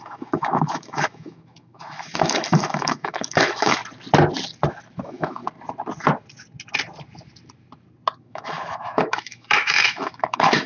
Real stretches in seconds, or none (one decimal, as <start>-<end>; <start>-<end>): 3.8-5.0; 5.4-8.2